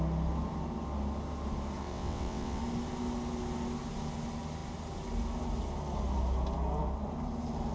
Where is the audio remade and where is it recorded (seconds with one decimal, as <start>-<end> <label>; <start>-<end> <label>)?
0.0-1.8 recorded; 1.8-2.6 remade; 2.6-7.7 recorded